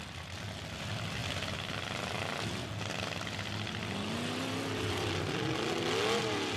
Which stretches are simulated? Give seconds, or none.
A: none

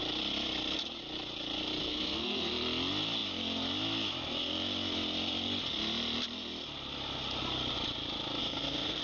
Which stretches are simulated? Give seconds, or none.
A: 1.8-2.5 (codec, SNAC); 8.4-9.0

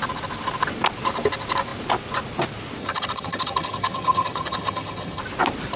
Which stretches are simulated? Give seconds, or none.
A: 2.8-5.2 (vocoder, HiFi-GAN)

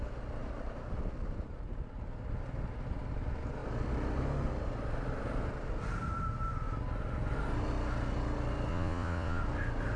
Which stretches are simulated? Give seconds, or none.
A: 8.7-9.4 (vocoder, Vocos)